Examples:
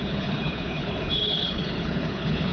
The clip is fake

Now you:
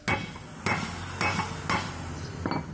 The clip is real